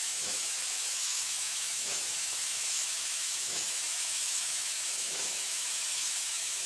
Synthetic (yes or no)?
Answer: yes